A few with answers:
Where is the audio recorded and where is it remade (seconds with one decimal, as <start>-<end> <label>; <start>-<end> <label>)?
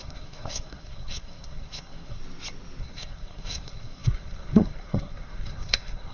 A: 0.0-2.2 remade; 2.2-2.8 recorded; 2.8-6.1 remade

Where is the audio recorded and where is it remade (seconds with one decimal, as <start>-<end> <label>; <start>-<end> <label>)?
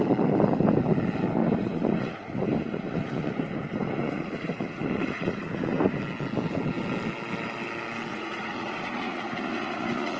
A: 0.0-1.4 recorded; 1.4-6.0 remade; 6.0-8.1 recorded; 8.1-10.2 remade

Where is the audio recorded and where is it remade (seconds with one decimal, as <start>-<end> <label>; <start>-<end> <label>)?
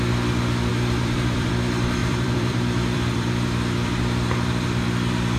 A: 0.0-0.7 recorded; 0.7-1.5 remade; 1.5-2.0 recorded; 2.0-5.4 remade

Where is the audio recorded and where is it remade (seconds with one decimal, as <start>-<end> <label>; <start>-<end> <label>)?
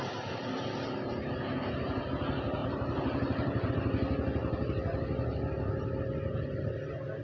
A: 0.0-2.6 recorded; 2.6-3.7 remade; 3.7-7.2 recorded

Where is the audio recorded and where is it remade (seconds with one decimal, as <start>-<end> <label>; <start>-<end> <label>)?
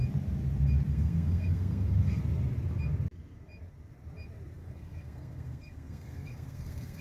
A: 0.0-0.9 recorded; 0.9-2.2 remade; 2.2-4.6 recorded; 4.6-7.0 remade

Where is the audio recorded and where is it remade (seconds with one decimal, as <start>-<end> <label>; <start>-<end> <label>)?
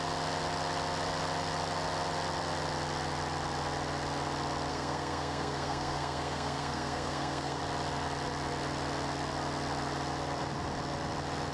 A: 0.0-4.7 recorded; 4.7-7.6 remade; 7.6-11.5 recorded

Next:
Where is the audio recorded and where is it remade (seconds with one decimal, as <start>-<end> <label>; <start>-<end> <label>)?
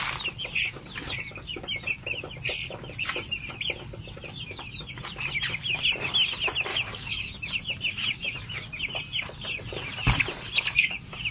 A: 0.0-6.7 recorded; 6.7-7.3 remade; 7.3-11.3 recorded